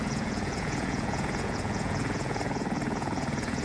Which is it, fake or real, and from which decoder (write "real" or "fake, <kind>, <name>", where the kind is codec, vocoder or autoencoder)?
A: fake, vocoder, Vocos